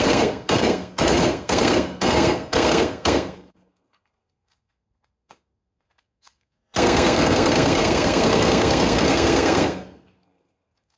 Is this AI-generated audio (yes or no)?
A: yes